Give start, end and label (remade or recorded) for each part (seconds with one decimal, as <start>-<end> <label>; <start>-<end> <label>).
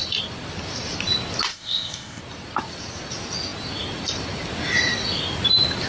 0.0-1.5 recorded; 1.5-2.2 remade; 2.2-5.9 recorded